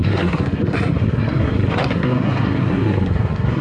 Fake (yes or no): yes